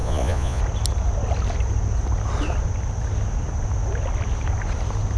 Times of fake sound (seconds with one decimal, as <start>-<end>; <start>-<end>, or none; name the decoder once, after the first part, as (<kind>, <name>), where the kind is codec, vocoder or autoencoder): 0.0-0.6 (vocoder, Vocos)